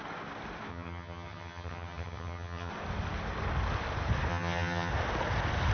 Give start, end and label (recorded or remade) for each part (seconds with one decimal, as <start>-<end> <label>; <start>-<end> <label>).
0.0-0.7 recorded; 0.7-2.7 remade; 2.7-4.3 recorded; 4.3-4.9 remade; 4.9-5.7 recorded